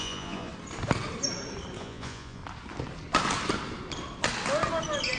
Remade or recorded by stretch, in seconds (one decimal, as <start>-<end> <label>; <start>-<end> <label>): 0.0-0.5 remade; 0.5-1.8 recorded; 1.8-2.4 remade; 2.4-5.2 recorded